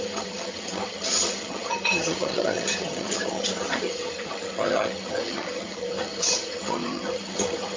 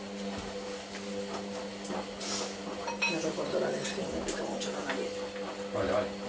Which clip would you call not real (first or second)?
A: first